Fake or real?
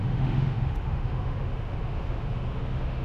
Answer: fake